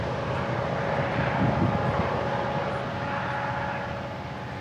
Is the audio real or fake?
real